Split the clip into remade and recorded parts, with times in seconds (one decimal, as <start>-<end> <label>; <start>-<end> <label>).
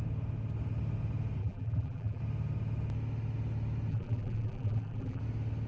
0.0-1.4 recorded; 1.4-2.2 remade; 2.2-3.9 recorded; 3.9-5.2 remade; 5.2-5.7 recorded